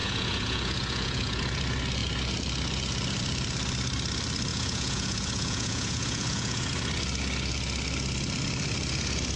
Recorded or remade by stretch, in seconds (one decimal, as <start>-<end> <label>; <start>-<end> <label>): 0.0-1.4 remade; 1.4-4.5 recorded; 4.5-6.7 remade; 6.7-9.4 recorded